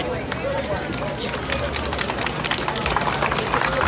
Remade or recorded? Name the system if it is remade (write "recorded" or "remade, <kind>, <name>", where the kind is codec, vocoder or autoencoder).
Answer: recorded